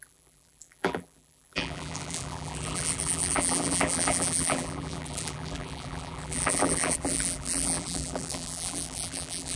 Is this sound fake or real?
fake